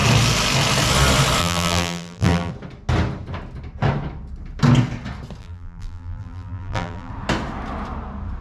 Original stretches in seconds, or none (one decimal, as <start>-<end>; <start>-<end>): 0.0-1.4; 2.5-5.4; 7.1-8.4